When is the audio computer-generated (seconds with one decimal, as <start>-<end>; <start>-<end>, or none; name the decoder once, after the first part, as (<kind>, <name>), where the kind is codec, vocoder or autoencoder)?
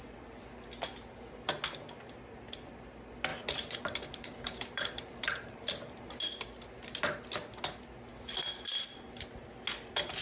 3.3-6.2 (vocoder, BigVGAN v2)